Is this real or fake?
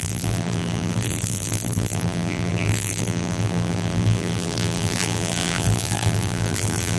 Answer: fake